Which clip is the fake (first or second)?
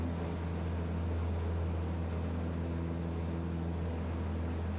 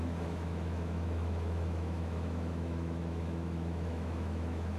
second